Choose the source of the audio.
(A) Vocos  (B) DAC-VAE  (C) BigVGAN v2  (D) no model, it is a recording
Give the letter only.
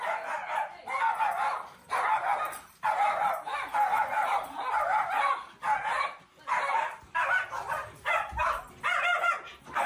D